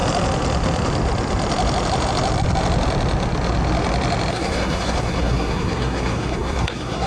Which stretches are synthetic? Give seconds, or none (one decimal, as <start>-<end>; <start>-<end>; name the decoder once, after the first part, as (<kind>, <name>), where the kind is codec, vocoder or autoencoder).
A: 4.3-7.1 (codec, SNAC)